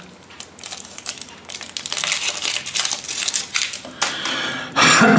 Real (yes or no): yes